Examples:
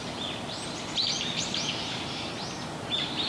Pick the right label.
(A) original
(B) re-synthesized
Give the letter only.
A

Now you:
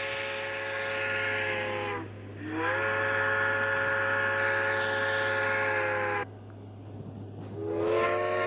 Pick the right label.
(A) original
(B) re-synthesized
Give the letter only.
A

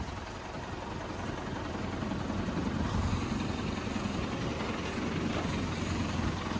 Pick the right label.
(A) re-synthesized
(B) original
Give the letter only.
B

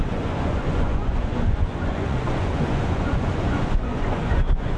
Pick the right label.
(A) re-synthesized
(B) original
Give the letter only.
A